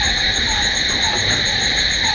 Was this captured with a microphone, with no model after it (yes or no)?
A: yes